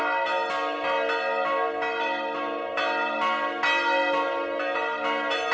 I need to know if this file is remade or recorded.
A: recorded